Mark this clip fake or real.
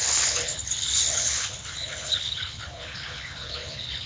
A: fake